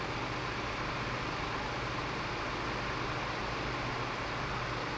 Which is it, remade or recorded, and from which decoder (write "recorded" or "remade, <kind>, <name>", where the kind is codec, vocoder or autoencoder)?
recorded